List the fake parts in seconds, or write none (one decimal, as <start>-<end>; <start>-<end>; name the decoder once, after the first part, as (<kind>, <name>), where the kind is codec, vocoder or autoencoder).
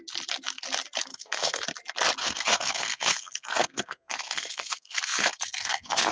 1.1-1.6 (codec, SNAC); 2.2-6.1